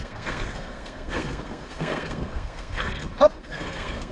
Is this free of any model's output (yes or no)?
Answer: no